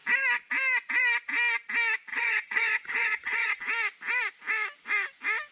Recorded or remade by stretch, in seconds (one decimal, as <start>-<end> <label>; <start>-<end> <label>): 0.0-2.1 recorded; 2.1-3.6 remade; 3.6-5.5 recorded